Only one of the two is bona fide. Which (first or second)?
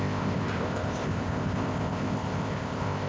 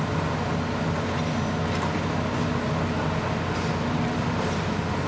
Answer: second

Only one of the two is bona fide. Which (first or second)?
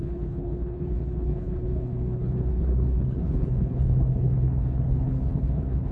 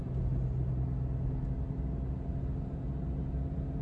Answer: second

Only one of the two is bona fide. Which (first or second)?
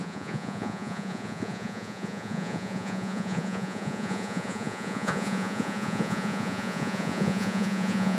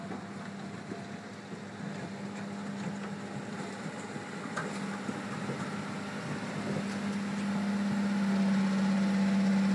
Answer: second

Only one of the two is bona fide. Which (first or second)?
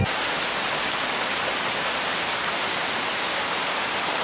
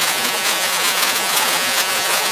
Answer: first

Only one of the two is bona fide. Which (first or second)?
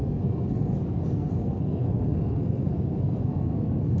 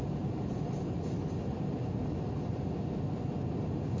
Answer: second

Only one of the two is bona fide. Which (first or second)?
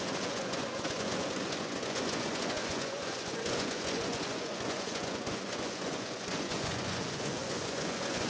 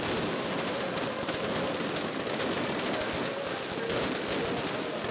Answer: second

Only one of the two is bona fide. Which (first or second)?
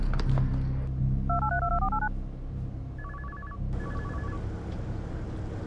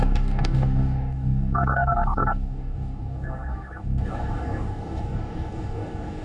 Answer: first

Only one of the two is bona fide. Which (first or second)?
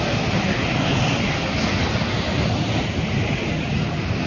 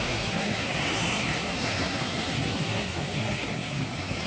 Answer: first